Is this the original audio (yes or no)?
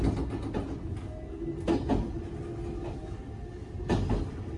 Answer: yes